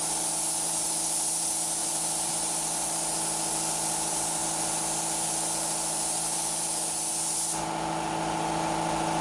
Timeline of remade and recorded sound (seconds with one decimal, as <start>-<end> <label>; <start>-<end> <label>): 0.0-1.8 recorded; 1.8-2.3 remade; 2.3-9.2 recorded